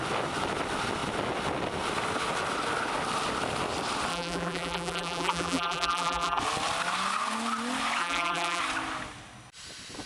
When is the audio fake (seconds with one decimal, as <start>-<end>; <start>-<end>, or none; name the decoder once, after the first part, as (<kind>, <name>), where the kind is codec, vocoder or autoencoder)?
4.1-6.4 (vocoder, BigVGAN v2); 8.0-8.6